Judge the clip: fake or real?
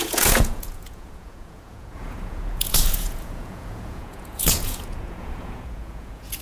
fake